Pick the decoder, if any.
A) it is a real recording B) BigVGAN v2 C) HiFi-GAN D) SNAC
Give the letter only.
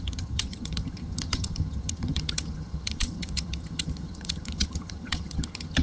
C